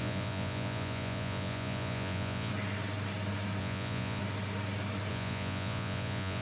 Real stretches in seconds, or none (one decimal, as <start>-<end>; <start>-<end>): 2.5-3.6; 4.2-5.1